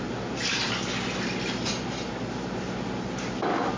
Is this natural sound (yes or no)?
yes